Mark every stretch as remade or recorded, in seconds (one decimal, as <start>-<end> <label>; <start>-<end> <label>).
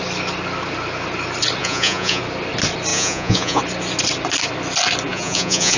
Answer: 0.0-1.6 recorded; 1.6-2.2 remade; 2.2-2.9 recorded; 2.9-3.6 remade; 3.6-5.1 recorded; 5.1-5.8 remade